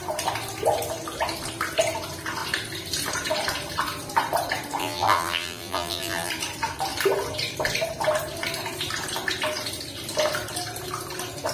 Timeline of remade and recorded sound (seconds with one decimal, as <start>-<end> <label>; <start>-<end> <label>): 0.0-4.8 recorded; 4.8-6.3 remade; 6.3-11.5 recorded